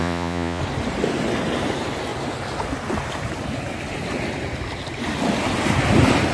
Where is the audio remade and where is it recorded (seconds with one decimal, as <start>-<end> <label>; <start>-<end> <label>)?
0.0-0.6 remade; 0.6-6.3 recorded